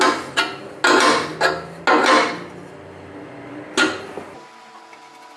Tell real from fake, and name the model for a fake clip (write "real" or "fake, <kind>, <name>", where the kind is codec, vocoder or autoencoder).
real